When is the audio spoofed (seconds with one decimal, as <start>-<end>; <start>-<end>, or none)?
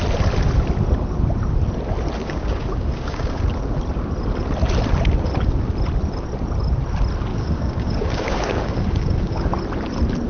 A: 2.2-3.4; 7.3-9.5